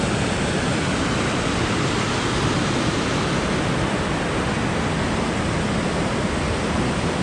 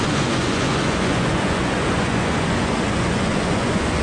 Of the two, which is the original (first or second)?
first